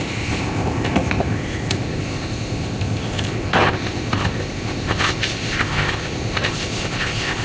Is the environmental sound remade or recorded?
remade